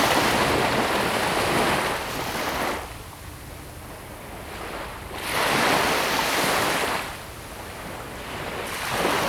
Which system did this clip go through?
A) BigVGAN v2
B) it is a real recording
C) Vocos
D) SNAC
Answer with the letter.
B